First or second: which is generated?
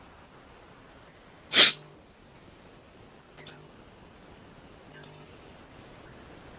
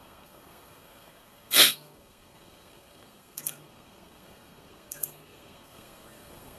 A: second